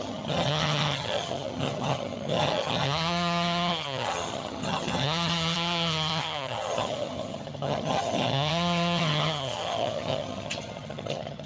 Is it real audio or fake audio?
fake